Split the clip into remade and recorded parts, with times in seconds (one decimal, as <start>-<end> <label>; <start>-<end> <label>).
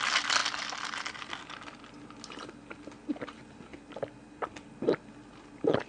0.0-5.9 recorded